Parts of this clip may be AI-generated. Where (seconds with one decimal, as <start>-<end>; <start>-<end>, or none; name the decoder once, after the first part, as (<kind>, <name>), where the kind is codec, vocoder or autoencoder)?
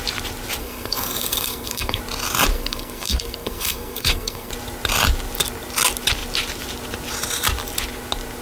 0.6-2.0 (codec, SNAC); 2.5-4.5